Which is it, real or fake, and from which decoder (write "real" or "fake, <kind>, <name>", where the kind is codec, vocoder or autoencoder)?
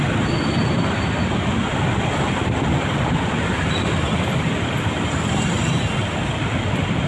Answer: fake, vocoder, BigVGAN v2